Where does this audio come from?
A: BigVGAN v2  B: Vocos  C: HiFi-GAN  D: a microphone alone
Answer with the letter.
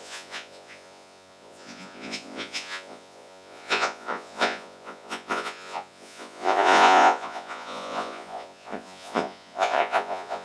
B